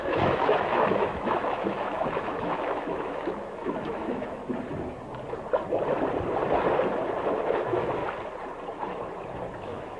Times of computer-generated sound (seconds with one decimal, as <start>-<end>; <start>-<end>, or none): 0.0-4.4; 7.3-8.0; 9.6-10.0